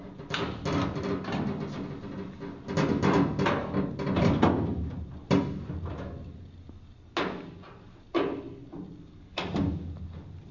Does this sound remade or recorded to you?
recorded